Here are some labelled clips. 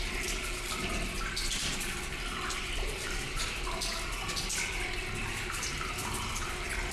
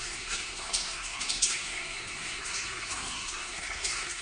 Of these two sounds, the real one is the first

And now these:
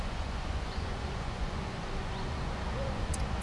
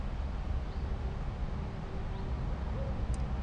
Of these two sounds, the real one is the second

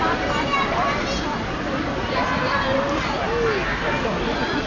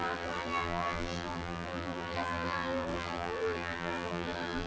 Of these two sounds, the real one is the first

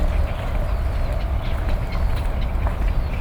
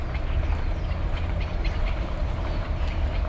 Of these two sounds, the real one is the first